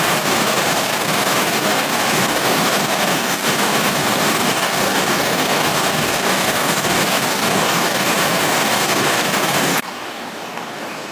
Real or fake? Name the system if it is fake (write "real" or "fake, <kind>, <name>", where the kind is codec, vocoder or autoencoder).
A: fake, codec, DAC